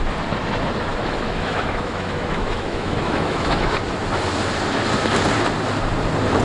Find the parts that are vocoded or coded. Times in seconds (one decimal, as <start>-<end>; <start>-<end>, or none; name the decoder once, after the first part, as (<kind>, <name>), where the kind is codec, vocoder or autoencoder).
0.9-3.7 (autoencoder, DAC-VAE)